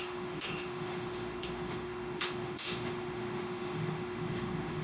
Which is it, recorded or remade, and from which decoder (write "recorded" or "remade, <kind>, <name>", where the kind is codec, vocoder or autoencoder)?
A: remade, autoencoder, DAC-VAE